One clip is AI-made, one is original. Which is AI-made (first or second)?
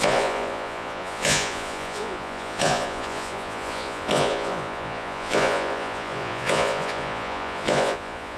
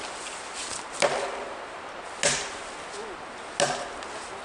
first